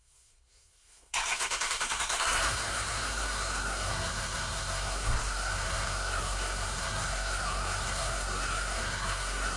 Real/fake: fake